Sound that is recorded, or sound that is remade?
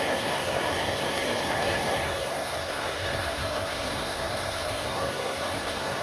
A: remade